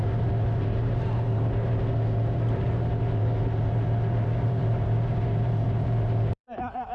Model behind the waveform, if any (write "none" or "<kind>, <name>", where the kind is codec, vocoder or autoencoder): vocoder, BigVGAN v2